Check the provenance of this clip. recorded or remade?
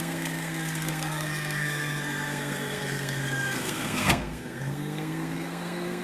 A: remade